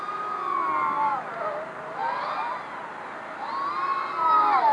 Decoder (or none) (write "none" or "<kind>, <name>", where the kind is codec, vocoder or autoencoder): none